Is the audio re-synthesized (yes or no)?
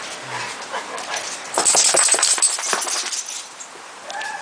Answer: yes